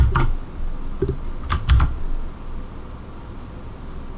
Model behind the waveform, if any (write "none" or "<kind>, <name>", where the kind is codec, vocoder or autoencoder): none